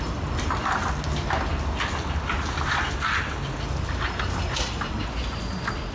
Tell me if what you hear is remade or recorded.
recorded